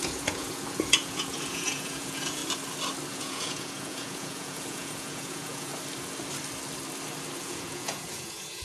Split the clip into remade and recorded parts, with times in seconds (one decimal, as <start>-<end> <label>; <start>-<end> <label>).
0.0-2.4 remade; 2.4-3.1 recorded; 3.1-5.7 remade; 5.7-7.4 recorded; 7.4-8.6 remade